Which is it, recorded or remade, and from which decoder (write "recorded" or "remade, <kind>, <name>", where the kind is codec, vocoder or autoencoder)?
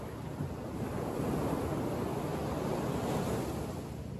recorded